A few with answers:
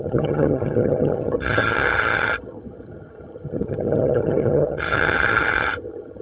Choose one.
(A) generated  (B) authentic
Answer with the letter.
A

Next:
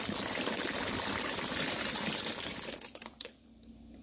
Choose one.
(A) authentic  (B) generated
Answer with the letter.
B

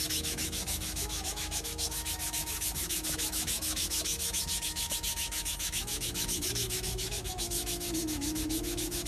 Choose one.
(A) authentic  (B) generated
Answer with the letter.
B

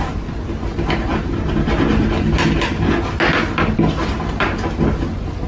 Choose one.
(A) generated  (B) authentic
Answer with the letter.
B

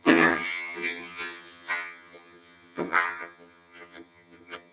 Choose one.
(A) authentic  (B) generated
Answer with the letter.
B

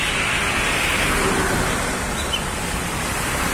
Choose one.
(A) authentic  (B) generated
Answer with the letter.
A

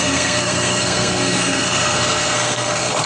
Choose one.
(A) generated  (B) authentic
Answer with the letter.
A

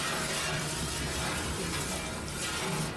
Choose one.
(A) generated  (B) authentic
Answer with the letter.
B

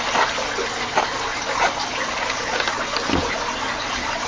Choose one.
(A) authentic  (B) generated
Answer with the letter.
A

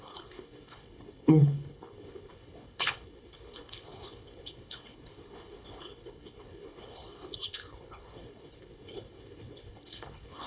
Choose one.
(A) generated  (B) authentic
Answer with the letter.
A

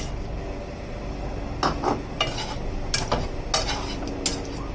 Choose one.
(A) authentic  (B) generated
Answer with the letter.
A